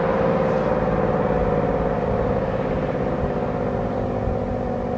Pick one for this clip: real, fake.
real